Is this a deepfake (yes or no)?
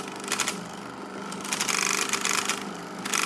no